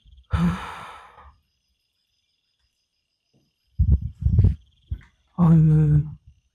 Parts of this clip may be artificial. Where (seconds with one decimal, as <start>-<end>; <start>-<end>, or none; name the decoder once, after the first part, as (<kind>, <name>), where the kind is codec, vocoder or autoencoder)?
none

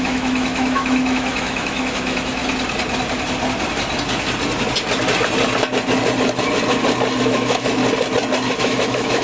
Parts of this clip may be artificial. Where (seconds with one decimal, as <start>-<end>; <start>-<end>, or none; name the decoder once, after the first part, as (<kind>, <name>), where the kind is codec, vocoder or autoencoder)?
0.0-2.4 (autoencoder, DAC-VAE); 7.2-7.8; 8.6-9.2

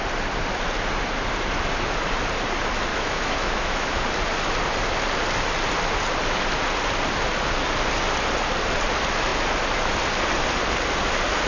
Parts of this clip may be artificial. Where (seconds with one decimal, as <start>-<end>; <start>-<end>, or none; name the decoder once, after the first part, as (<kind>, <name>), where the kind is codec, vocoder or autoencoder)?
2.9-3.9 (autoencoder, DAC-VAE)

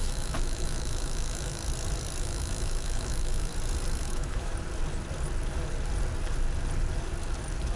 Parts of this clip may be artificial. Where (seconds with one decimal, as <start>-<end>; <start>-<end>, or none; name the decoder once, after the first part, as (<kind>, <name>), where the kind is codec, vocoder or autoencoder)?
0.0-1.6 (autoencoder, DAC-VAE); 2.2-3.5; 4.0-4.5